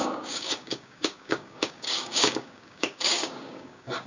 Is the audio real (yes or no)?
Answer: no